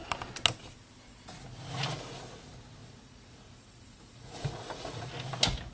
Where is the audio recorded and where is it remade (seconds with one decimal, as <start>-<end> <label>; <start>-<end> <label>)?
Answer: 0.0-2.8 recorded; 2.8-5.1 remade; 5.1-5.7 recorded